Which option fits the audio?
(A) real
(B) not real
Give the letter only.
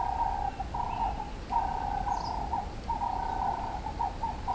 A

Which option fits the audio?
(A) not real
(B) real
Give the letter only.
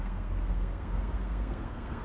A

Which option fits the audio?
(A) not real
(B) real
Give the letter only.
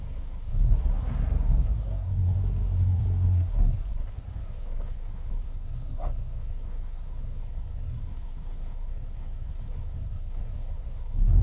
A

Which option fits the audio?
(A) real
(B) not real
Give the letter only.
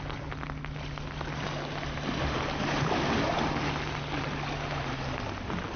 A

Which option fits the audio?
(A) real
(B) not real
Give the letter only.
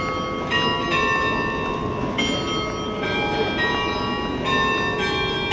A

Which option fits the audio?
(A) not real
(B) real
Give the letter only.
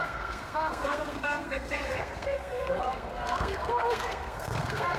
A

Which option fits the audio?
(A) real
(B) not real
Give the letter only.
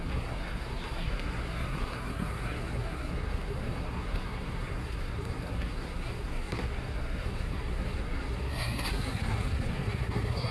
B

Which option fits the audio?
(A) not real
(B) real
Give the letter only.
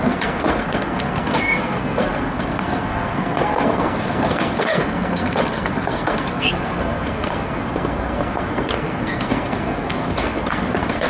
A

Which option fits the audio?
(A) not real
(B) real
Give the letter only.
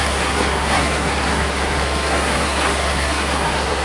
A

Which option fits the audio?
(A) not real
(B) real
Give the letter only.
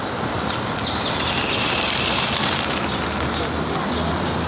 B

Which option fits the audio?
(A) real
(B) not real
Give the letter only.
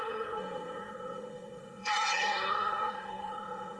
B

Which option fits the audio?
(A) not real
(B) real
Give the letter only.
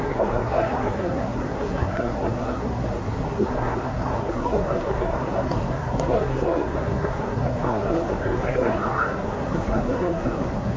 A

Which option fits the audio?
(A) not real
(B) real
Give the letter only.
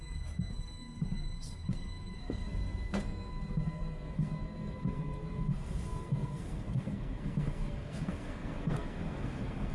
A